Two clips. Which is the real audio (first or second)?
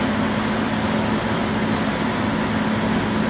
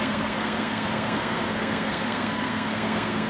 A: first